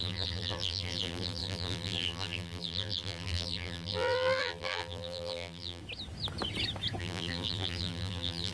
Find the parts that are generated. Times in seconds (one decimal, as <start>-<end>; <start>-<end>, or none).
0.0-5.8; 7.0-8.5